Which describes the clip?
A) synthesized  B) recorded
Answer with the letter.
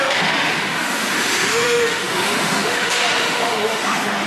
A